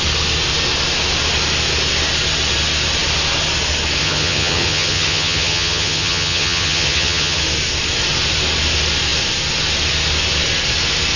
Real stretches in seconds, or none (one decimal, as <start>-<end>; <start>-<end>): 0.0-4.0; 7.4-11.2